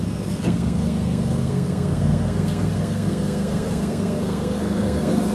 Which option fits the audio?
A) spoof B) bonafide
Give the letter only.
A